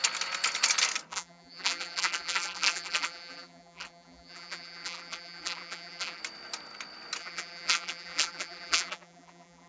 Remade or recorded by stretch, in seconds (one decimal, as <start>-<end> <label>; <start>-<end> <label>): 0.0-1.1 recorded; 1.1-6.2 remade; 6.2-7.2 recorded; 7.2-9.7 remade